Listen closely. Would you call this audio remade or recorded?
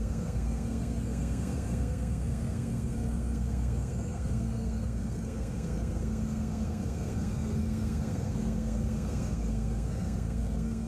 remade